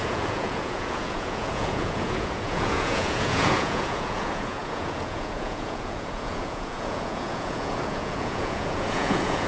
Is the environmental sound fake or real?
fake